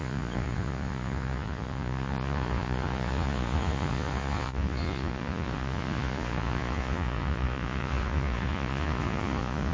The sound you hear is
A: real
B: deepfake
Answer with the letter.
B